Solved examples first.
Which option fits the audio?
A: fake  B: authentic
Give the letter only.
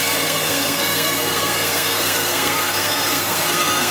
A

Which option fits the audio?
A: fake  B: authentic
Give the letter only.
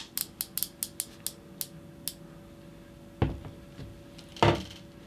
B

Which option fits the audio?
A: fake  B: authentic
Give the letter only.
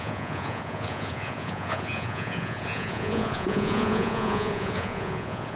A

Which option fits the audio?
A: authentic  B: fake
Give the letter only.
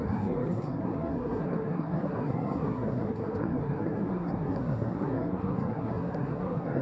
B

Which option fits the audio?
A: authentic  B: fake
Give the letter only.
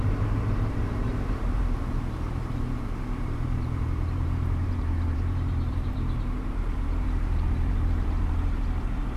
B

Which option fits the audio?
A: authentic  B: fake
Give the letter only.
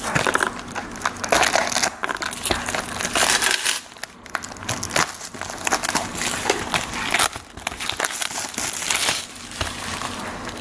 A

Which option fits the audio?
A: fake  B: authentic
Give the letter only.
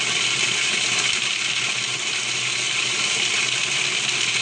B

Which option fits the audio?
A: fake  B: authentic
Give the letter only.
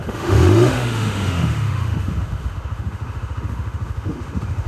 A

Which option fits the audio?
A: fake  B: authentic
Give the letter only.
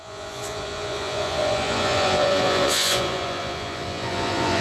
A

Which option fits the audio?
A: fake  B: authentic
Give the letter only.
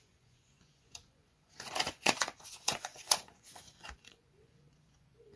A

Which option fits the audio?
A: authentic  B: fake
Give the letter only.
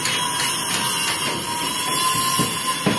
A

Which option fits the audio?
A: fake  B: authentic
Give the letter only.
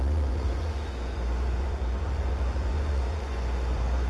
A